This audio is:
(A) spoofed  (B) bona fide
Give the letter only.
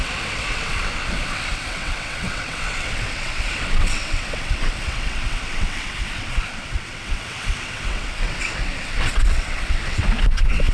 A